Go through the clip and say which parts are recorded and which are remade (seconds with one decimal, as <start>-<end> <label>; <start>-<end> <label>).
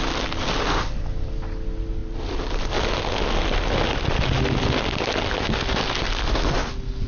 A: 0.0-2.0 recorded; 2.0-2.5 remade; 2.5-7.1 recorded